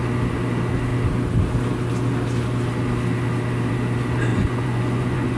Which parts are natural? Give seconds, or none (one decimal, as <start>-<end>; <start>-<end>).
0.0-4.3